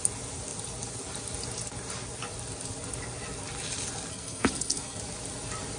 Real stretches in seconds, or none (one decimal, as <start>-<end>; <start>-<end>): 0.0-4.1; 5.0-5.8